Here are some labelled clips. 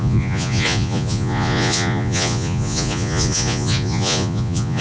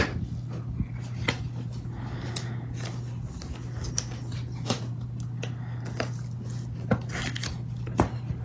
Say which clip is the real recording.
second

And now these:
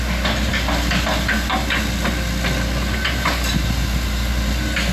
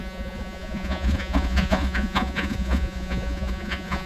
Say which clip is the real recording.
first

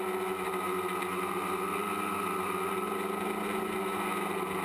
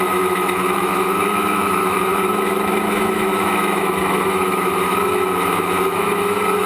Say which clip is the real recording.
first